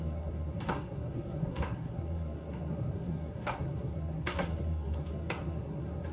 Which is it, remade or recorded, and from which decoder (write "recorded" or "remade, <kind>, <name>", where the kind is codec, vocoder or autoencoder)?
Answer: remade, codec, SNAC